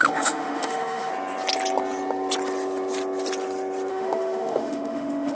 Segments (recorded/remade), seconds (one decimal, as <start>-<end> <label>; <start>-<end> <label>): 0.0-1.1 remade; 1.1-3.9 recorded; 3.9-5.3 remade